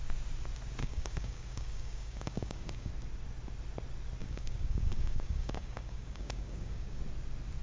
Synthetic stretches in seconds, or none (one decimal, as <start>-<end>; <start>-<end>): 0.8-2.9; 4.2-7.0